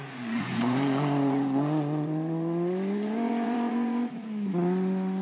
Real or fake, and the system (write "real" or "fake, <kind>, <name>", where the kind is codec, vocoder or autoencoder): fake, vocoder, Vocos